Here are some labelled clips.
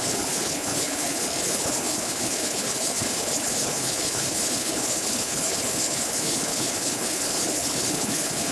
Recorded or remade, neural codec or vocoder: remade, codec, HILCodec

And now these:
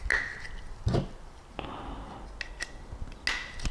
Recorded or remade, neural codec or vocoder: recorded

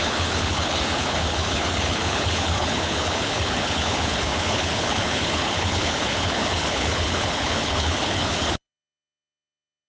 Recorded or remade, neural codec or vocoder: remade, codec, HILCodec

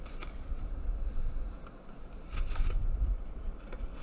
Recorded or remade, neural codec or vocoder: recorded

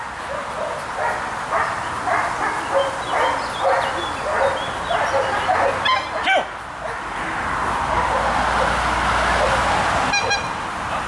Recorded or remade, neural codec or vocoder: recorded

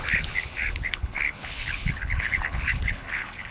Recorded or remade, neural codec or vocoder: remade, codec, HILCodec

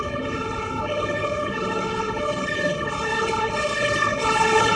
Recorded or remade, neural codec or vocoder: remade, codec, HILCodec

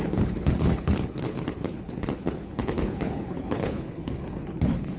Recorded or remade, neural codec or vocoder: remade, codec, HILCodec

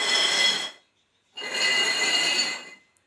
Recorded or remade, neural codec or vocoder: recorded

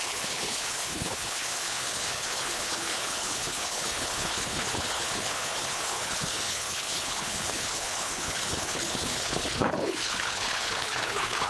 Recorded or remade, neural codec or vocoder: remade, codec, HILCodec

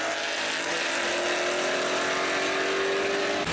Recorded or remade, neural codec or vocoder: recorded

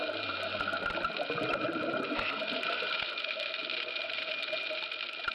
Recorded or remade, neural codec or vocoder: recorded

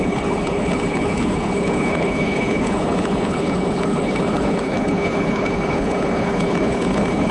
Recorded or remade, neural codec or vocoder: remade, codec, HILCodec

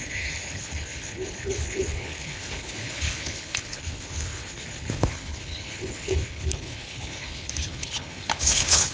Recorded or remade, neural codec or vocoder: remade, codec, HILCodec